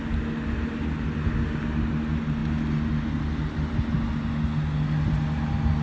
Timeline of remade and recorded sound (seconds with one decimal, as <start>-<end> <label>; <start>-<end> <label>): 0.0-5.8 recorded